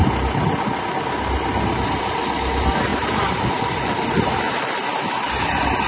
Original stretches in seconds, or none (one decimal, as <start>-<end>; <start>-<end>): 0.0-5.9